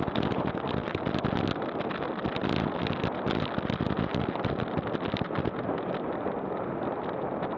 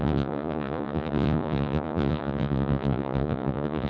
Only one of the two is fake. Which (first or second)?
second